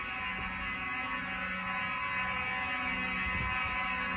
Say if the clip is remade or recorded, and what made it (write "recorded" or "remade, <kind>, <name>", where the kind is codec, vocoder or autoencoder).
recorded